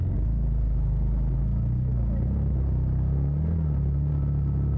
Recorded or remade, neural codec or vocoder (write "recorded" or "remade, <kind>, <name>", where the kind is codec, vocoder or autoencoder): recorded